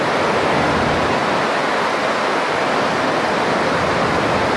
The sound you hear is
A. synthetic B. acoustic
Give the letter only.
B